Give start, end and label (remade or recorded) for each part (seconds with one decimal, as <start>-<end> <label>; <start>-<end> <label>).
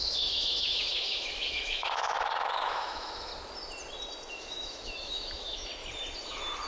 0.0-3.3 remade; 3.3-4.3 recorded; 4.3-5.7 remade; 5.7-6.7 recorded